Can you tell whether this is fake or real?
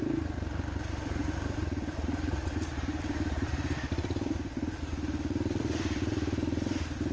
fake